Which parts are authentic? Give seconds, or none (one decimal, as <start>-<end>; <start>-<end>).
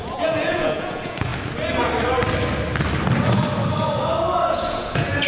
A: 1.3-4.5